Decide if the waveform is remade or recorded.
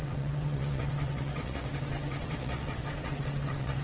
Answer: remade